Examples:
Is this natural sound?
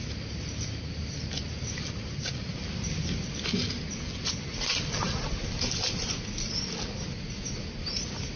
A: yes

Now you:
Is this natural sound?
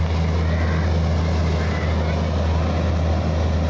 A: yes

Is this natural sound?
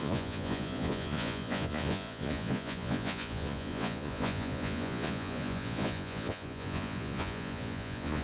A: no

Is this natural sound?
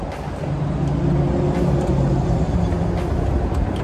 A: yes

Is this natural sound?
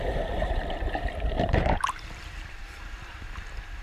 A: no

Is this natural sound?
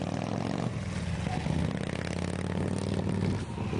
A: yes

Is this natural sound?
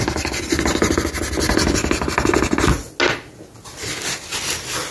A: yes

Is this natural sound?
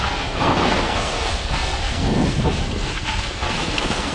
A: no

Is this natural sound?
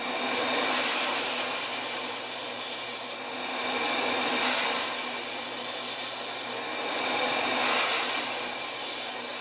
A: yes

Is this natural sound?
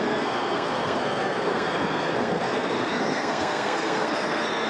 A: no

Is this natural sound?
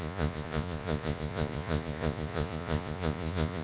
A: no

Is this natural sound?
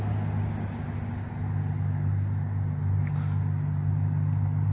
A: yes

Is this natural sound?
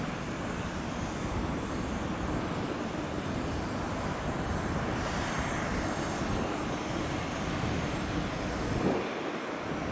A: yes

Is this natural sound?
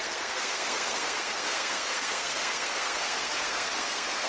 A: no